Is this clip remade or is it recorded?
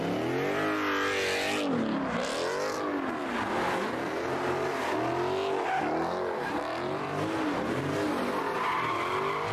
recorded